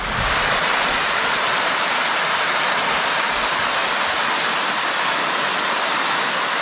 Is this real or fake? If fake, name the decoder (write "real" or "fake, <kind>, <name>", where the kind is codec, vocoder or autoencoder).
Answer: real